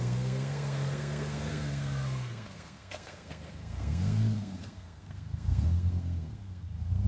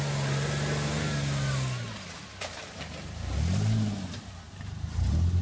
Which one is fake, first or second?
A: first